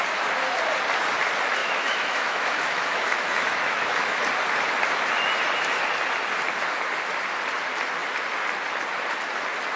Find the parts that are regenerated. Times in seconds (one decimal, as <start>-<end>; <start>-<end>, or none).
1.6-4.2